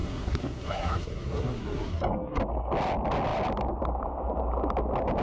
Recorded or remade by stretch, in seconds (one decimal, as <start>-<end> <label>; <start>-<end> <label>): 0.0-2.4 remade; 2.4-5.2 recorded